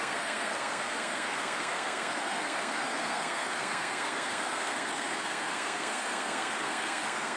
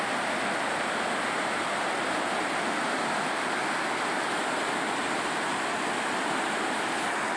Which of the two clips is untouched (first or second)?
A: second